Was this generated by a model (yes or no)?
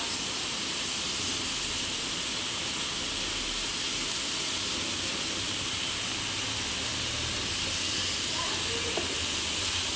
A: no